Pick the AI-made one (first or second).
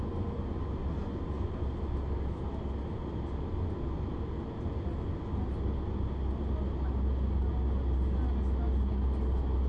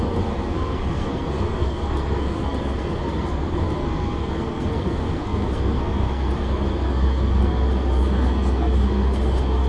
second